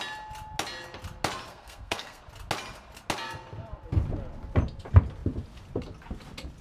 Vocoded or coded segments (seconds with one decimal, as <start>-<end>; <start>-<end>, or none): 1.5-2.2